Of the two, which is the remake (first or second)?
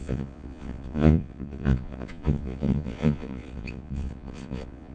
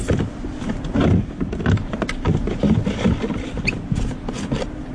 first